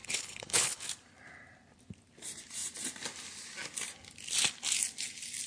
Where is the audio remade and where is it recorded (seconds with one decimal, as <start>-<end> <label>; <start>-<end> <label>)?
0.0-0.8 remade; 0.8-5.5 recorded